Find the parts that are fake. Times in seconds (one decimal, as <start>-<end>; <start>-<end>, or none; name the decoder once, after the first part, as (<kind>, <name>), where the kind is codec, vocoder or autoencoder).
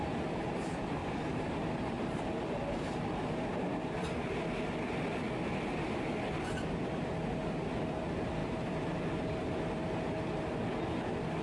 1.0-2.2 (vocoder, BigVGAN v2); 8.4-9.3